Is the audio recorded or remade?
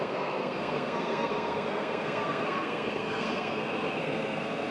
remade